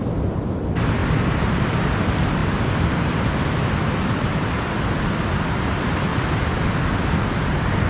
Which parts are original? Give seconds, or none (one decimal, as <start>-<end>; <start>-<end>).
1.0-1.8; 2.4-3.6; 6.1-7.4